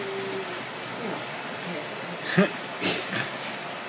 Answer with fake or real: real